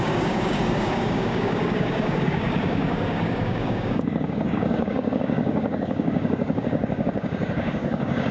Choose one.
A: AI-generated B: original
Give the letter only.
A